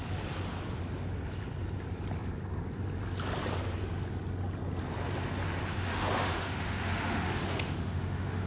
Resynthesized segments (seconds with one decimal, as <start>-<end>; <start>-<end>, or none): 5.7-8.5

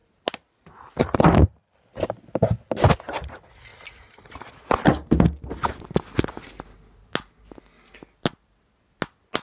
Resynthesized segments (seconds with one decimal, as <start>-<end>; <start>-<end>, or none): none

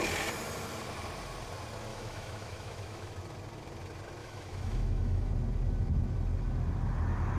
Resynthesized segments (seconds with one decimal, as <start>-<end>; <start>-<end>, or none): 1.9-3.1; 4.2-5.3